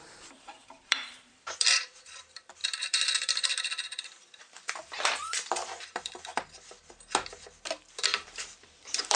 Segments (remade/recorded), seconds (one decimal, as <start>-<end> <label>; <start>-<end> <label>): 0.0-6.3 remade; 6.3-7.9 recorded; 7.9-9.2 remade